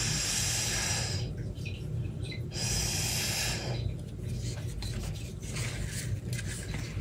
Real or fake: real